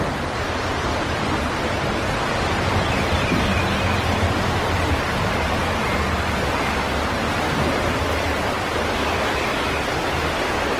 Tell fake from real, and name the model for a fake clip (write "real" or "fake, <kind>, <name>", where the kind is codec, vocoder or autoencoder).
fake, vocoder, BigVGAN v2